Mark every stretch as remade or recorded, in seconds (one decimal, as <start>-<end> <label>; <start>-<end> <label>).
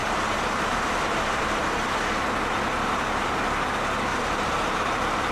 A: 0.0-2.2 remade; 2.2-4.1 recorded; 4.1-4.7 remade; 4.7-5.3 recorded